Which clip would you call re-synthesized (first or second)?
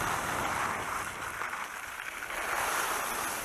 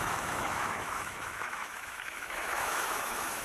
second